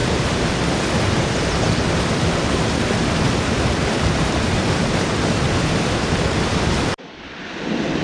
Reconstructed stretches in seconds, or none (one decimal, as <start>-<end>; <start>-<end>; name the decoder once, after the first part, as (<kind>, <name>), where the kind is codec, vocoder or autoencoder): 0.0-0.5 (vocoder, BigVGAN v2)